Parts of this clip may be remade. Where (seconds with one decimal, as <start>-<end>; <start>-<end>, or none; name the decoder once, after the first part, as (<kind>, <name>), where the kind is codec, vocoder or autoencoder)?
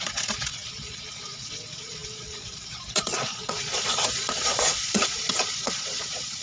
0.0-6.4 (vocoder, Vocos)